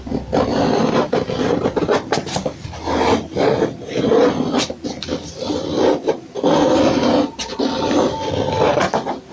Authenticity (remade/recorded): recorded